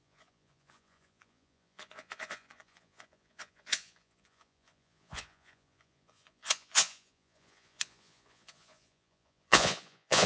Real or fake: fake